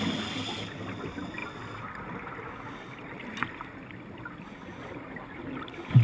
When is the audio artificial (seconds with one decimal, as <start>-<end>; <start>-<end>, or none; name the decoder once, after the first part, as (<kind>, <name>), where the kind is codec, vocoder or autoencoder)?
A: none